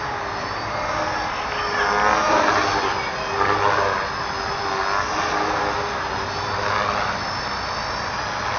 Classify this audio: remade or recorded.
recorded